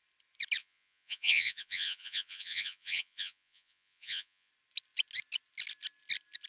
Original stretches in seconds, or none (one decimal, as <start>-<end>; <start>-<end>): 0.0-0.6; 4.5-6.5